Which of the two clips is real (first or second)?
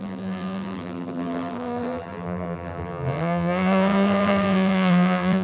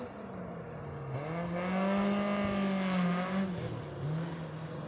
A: second